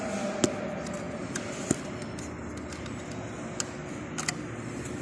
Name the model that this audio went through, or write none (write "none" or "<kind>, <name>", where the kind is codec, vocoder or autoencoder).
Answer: none